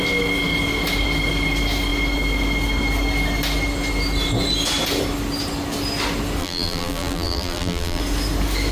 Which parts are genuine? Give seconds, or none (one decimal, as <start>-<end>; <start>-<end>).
0.0-6.4; 8.0-8.7